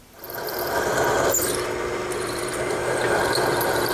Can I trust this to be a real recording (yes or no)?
no